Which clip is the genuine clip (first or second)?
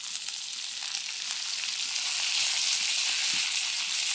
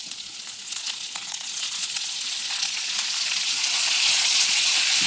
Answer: first